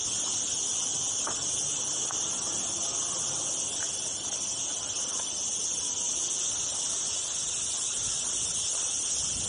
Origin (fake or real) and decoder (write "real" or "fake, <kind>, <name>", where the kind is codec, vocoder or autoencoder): real